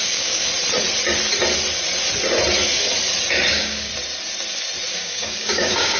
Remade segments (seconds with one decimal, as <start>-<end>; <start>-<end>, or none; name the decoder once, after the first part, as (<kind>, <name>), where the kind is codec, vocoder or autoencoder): 0.0-0.5 (codec, DAC); 3.5-3.9; 4.9-6.0